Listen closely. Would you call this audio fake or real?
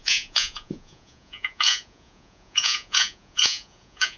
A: fake